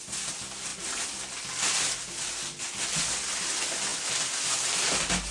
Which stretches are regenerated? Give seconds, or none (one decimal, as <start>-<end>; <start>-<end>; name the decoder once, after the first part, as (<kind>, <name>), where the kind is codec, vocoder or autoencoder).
none